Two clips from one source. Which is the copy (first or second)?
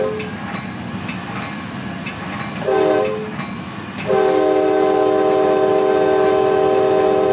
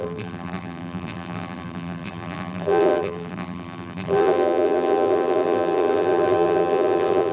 second